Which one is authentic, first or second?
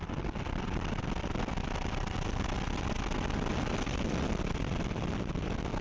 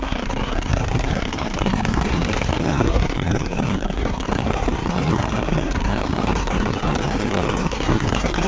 first